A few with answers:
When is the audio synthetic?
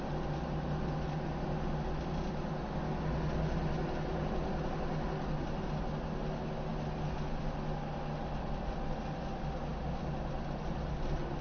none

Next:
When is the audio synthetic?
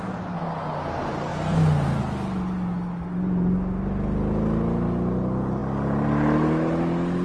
none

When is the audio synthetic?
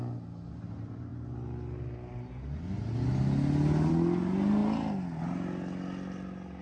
none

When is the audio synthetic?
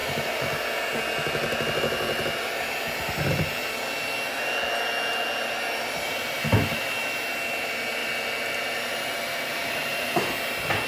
0.0-0.6 (vocoder, BigVGAN v2); 8.0-10.3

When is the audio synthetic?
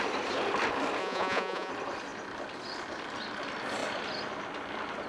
1.0-1.7 (vocoder, Vocos)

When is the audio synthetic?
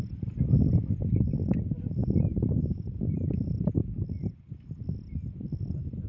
2.0-3.0 (vocoder, BigVGAN v2)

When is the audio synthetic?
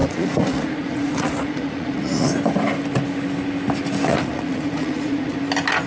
0.0-2.3 (vocoder, Vocos); 4.1-5.4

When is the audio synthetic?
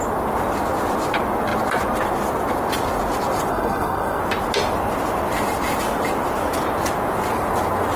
3.5-4.2 (codec, SNAC)